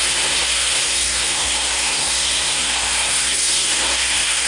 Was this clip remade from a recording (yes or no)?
yes